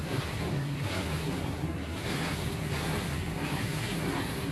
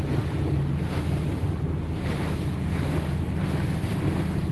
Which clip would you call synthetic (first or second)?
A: first